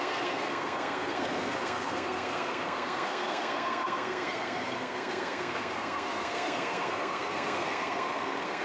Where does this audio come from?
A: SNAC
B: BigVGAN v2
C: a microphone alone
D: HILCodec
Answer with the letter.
A